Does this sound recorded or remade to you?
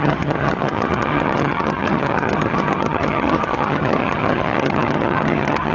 remade